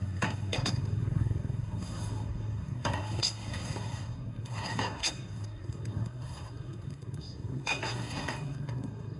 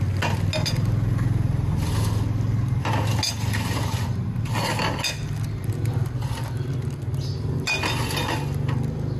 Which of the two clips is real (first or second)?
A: second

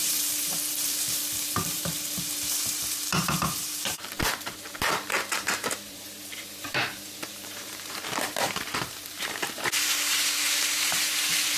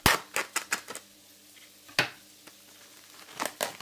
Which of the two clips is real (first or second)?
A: second